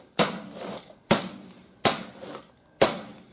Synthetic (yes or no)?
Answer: yes